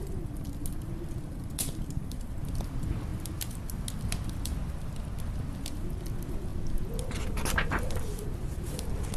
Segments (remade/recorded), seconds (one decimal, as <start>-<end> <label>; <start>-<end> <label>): 0.0-9.2 recorded